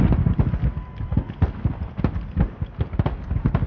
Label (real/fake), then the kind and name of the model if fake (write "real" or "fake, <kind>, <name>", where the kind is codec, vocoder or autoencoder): real